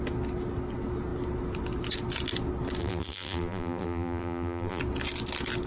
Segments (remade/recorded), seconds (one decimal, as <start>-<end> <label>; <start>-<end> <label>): 0.0-2.8 recorded; 2.8-4.8 remade; 4.8-5.7 recorded

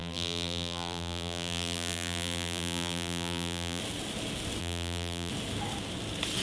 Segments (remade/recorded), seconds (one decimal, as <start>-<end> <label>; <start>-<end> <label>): 0.0-3.8 remade; 3.8-4.6 recorded; 4.6-5.3 remade; 5.3-6.4 recorded

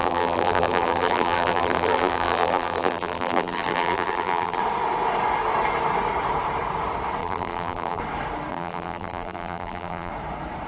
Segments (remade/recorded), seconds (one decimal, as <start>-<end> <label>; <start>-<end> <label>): 0.0-4.6 remade; 4.6-7.2 recorded; 7.2-8.0 remade; 8.0-8.5 recorded; 8.5-10.1 remade; 10.1-10.7 recorded

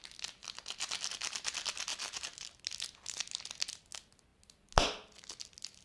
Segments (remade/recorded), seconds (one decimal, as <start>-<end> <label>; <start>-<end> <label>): 0.0-1.9 recorded; 1.9-2.6 remade; 2.6-5.8 recorded

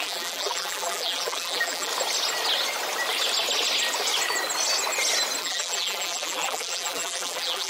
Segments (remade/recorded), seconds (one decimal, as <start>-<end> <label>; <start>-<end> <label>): 0.0-1.9 remade; 1.9-5.4 recorded; 5.4-7.7 remade

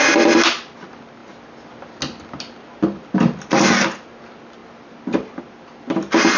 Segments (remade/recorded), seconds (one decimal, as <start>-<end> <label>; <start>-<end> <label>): 0.0-6.4 recorded

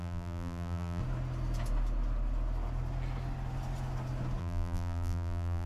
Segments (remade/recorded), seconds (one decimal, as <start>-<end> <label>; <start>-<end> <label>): 0.0-1.0 remade; 1.0-4.4 recorded; 4.4-5.7 remade

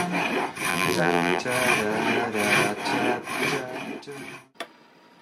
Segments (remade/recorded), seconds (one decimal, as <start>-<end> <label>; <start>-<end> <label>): 0.0-0.7 recorded; 0.7-1.4 remade; 1.4-5.2 recorded